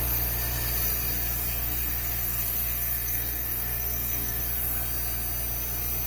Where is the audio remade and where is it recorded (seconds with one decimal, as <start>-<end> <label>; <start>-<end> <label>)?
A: 0.0-1.5 recorded; 1.5-4.4 remade; 4.4-6.1 recorded